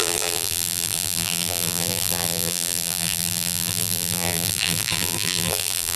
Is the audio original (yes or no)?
no